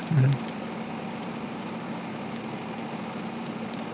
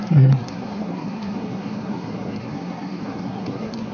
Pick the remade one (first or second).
second